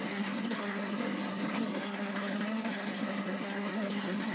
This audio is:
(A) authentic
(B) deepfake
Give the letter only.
B